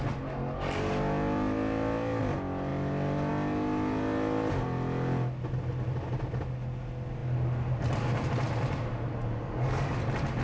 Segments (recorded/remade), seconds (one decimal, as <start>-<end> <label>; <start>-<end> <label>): 0.0-9.2 recorded; 9.2-10.0 remade; 10.0-10.4 recorded